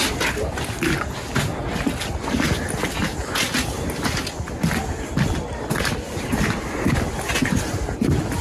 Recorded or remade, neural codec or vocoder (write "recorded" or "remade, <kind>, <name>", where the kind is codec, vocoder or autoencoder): recorded